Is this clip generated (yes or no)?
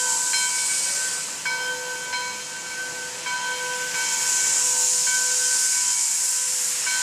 no